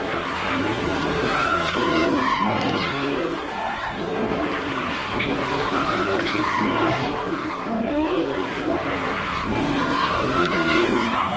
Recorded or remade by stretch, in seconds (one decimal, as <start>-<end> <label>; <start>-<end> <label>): 0.0-11.4 remade